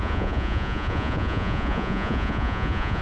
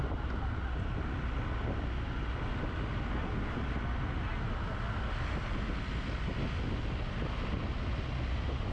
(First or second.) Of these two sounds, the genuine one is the second